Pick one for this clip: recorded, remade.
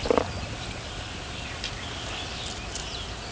recorded